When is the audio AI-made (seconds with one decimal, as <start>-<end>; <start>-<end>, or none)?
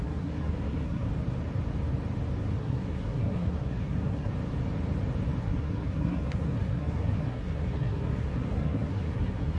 0.0-1.1; 2.6-4.3; 5.4-9.6